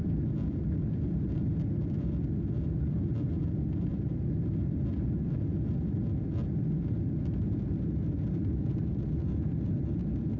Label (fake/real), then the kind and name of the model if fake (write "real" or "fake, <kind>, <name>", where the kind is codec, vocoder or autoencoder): real